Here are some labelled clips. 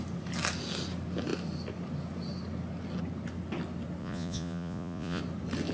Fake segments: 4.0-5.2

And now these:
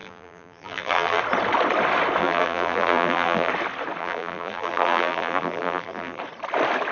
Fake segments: 0.0-1.2; 2.2-3.5; 4.0-6.2

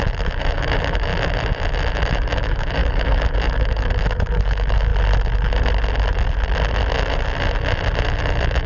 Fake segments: 0.0-1.1; 1.9-4.9; 8.0-8.7

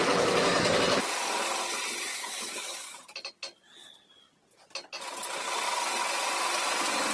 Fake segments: 0.0-1.0; 2.1-3.0

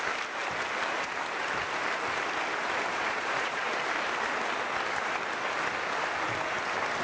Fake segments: 2.9-3.6

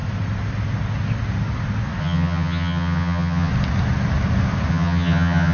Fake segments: 2.0-3.5; 4.7-5.5

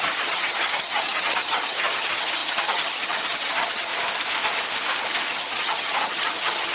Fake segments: 0.0-3.9; 5.3-6.7